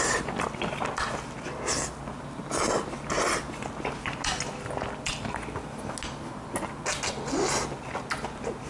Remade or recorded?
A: recorded